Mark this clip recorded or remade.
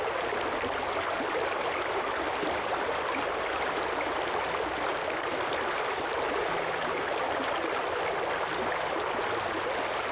recorded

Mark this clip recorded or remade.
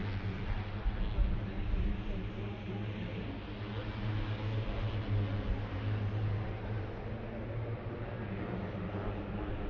recorded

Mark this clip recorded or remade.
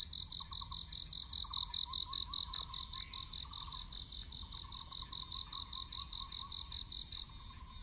recorded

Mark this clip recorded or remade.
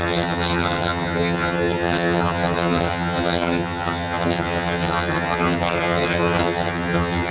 remade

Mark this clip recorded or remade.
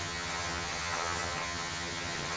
remade